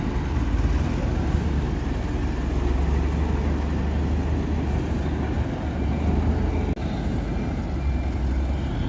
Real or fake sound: real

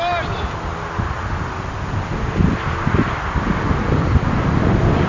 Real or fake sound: real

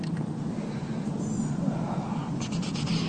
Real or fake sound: real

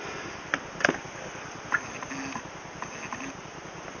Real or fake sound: real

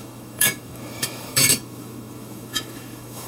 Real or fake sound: fake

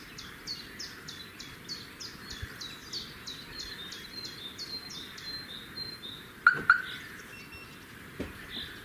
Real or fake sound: real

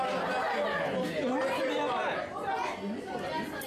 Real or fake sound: real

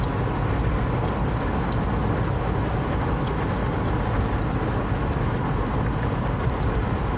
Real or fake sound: real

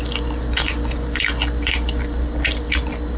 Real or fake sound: real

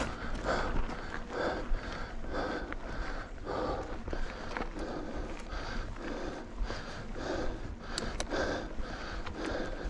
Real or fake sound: real